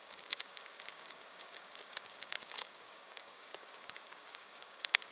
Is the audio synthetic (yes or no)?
yes